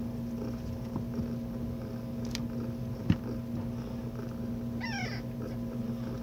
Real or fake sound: fake